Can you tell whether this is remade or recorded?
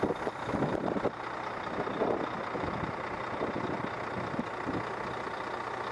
recorded